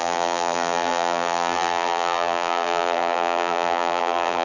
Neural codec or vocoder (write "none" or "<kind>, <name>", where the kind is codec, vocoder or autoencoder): vocoder, BigVGAN v2